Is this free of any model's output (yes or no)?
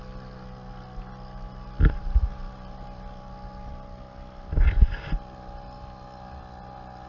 yes